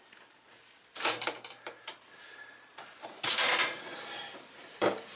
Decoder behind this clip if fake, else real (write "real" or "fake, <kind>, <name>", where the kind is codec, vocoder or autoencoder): fake, vocoder, BigVGAN v2